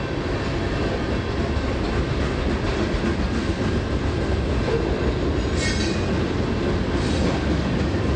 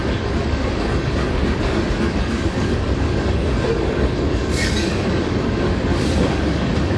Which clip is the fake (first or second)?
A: second